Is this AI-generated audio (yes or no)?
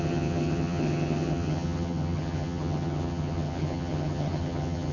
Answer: yes